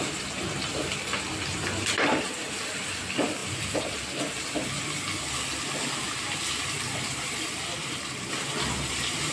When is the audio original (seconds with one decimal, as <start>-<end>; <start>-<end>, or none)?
3.4-5.9